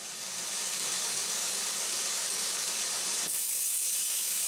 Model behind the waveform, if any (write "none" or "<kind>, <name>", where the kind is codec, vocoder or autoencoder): codec, DAC